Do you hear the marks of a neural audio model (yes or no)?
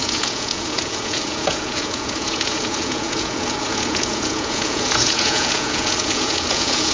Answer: yes